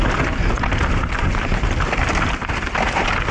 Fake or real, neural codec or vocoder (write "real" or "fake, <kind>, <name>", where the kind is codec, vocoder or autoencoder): real